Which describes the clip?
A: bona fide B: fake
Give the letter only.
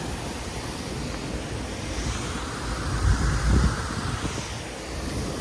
A